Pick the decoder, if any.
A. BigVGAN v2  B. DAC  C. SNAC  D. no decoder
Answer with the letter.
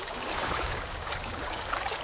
B